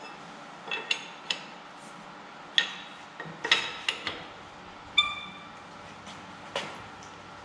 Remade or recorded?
recorded